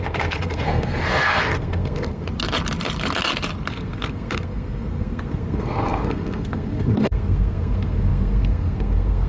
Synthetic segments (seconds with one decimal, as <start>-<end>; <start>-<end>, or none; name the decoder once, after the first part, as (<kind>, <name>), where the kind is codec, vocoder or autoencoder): 0.0-2.3 (codec, SNAC); 3.7-9.3